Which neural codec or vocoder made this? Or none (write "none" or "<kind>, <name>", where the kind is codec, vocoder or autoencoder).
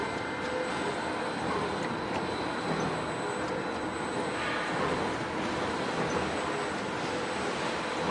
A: none